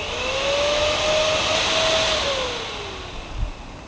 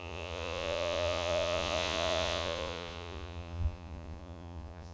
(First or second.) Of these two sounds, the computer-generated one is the second